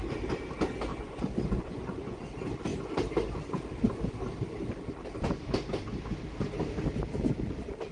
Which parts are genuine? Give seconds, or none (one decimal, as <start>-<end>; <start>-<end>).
0.0-0.9; 2.2-7.9